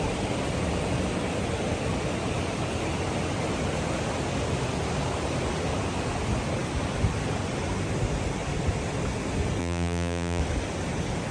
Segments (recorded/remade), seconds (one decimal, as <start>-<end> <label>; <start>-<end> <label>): 0.0-9.6 recorded; 9.6-10.4 remade; 10.4-11.3 recorded